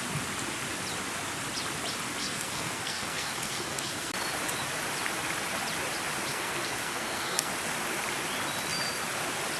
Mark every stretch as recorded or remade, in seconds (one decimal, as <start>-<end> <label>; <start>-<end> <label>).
0.0-2.2 recorded; 2.2-4.1 remade; 4.1-6.3 recorded; 6.3-7.5 remade; 7.5-9.6 recorded